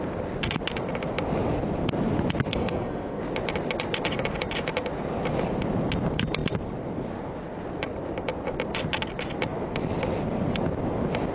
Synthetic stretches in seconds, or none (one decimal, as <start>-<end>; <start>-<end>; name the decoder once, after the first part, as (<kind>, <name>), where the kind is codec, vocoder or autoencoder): 2.5-3.2 (codec, SNAC)